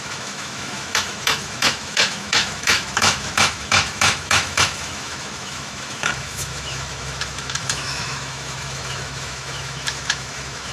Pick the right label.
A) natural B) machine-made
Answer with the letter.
B